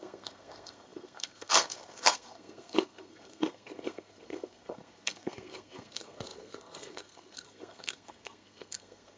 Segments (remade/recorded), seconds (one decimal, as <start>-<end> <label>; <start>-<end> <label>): 0.0-9.2 remade